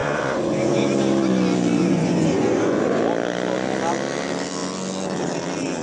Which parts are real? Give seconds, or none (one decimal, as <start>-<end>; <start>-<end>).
0.8-1.8; 3.0-5.8